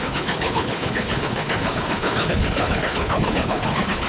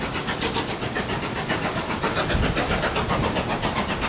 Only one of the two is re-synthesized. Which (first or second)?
first